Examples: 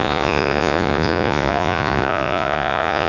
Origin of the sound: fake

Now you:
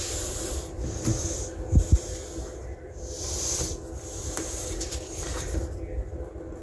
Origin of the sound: real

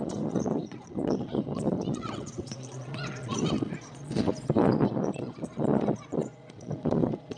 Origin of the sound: fake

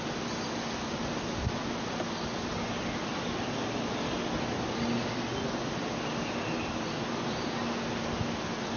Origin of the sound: real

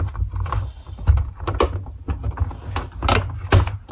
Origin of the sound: real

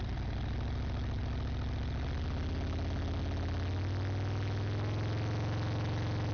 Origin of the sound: real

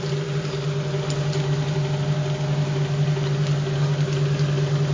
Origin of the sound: real